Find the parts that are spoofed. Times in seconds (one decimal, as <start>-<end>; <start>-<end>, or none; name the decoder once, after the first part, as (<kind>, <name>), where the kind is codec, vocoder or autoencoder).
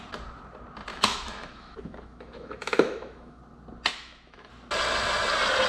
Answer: 0.9-3.4 (autoencoder, DAC-VAE); 3.9-4.5